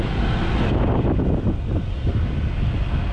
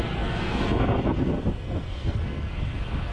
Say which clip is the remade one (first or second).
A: second